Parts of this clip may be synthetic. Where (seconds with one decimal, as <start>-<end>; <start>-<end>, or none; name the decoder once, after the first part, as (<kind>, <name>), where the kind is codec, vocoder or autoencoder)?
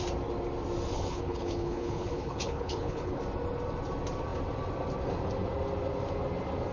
0.9-3.2 (codec, HILCodec)